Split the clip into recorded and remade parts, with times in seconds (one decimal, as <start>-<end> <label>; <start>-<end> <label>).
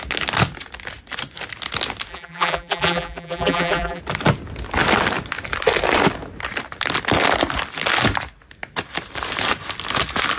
0.0-2.1 recorded; 2.1-4.0 remade; 4.0-10.4 recorded